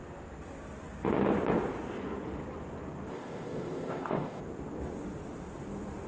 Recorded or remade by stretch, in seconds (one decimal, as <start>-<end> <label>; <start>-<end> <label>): 0.0-3.1 recorded; 3.1-4.4 remade; 4.4-6.1 recorded